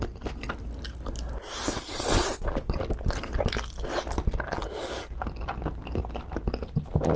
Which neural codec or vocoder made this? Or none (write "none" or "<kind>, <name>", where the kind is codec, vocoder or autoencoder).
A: none